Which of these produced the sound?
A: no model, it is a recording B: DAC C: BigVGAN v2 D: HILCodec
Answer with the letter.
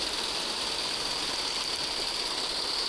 A